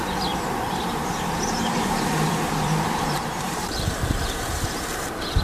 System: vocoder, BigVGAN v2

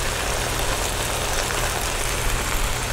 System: none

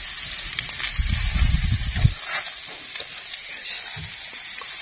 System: none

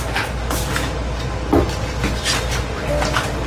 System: none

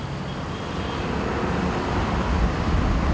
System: none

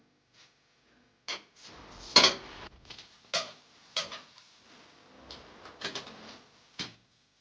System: none